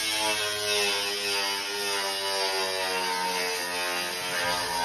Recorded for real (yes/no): yes